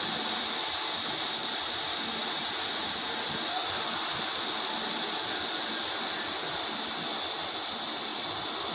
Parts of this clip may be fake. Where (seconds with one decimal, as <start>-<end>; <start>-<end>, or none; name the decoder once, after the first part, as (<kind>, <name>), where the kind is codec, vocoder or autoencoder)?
none